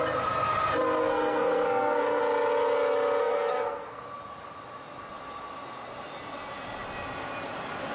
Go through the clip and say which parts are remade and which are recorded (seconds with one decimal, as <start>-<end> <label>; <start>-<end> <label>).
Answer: 0.0-1.0 recorded; 1.0-2.2 remade; 2.2-3.2 recorded; 3.2-4.0 remade; 4.0-7.9 recorded